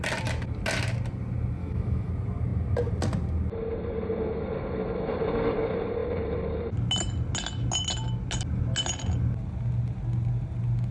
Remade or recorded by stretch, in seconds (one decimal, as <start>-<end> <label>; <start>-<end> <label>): 0.0-1.6 recorded; 1.6-2.1 remade; 2.1-10.9 recorded